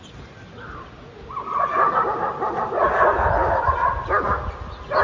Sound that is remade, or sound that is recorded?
recorded